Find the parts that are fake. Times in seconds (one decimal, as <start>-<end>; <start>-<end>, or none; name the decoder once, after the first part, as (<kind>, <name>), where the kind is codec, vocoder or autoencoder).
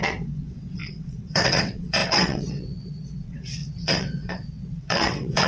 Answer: 0.0-5.5 (vocoder, WaveNeXt)